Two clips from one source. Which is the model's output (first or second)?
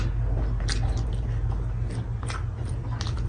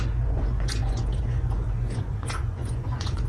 second